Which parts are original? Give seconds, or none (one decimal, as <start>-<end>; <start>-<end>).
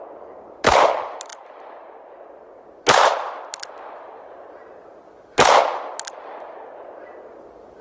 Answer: 0.0-7.8